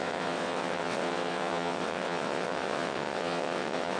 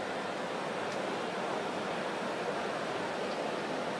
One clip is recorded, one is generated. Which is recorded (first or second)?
second